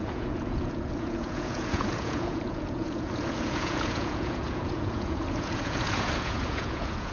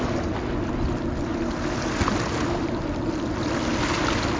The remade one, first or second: first